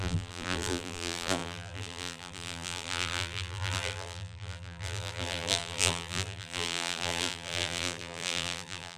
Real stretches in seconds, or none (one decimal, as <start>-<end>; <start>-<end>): none